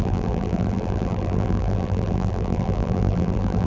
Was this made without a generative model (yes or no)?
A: no